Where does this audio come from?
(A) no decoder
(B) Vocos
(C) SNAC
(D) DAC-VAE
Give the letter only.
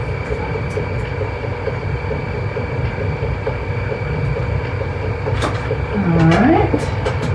A